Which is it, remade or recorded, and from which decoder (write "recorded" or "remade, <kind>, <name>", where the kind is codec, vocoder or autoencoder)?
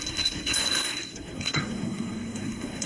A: remade, codec, SNAC